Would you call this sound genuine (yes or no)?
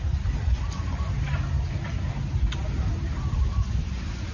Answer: yes